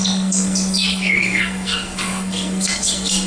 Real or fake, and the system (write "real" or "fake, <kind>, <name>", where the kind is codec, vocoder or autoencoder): fake, codec, SNAC